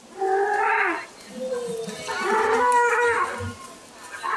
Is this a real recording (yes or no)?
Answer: yes